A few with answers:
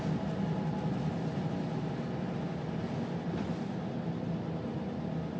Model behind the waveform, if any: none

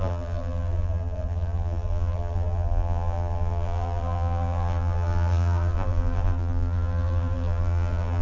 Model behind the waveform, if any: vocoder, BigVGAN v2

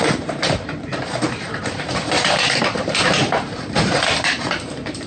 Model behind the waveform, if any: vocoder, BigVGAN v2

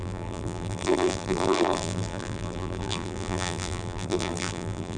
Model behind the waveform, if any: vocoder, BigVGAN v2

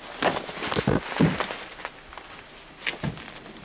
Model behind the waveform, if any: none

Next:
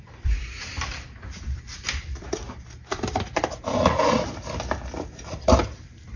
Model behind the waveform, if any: vocoder, BigVGAN v2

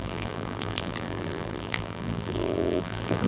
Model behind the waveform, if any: vocoder, BigVGAN v2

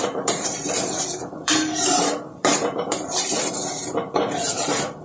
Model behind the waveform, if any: vocoder, BigVGAN v2